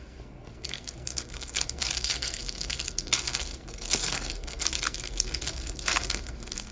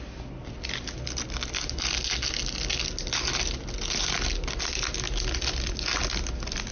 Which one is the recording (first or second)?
second